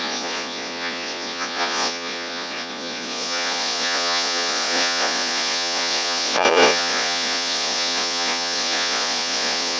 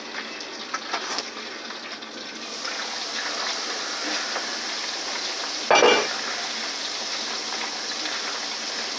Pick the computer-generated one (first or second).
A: first